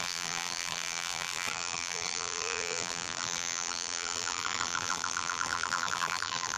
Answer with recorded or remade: remade